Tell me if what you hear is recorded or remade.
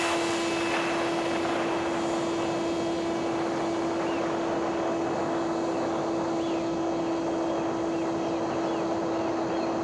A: recorded